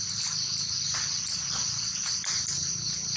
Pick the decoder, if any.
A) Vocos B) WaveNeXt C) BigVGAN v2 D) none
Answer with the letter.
D